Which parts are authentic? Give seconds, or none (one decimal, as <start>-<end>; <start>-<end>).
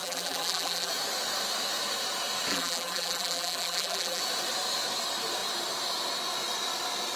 0.9-2.5; 4.2-7.2